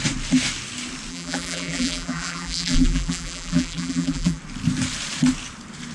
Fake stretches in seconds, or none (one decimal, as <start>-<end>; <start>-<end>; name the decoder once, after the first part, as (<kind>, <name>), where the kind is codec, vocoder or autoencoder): 1.1-4.4 (vocoder, BigVGAN v2)